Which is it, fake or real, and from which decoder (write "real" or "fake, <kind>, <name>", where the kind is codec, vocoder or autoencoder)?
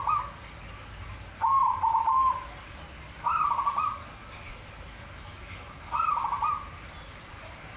real